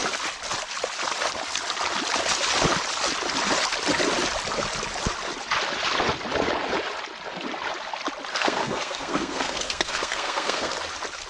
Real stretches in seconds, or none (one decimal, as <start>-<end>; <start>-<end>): 0.0-8.3; 10.7-11.3